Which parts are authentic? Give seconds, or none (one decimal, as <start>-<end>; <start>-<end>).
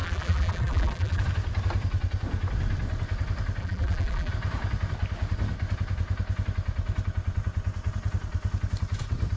1.2-3.6; 4.3-9.4